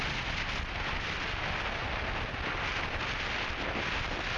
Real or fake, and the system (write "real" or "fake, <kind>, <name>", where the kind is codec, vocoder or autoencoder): real